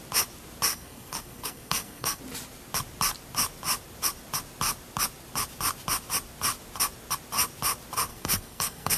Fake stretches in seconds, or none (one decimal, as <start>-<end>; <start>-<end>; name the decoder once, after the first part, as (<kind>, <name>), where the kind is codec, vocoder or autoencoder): 0.7-2.2 (codec, SNAC); 8.1-9.0